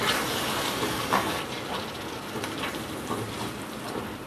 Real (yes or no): yes